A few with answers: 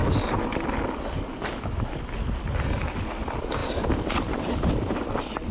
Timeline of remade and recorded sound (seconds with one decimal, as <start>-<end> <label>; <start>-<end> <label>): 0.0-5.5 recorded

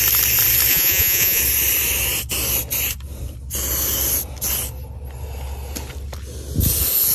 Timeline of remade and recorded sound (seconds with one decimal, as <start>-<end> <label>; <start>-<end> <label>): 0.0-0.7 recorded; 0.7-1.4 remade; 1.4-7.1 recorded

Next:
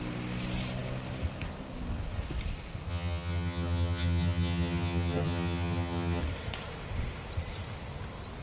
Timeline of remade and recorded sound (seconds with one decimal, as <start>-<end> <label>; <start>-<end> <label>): 0.0-2.9 recorded; 2.9-6.2 remade; 6.2-8.4 recorded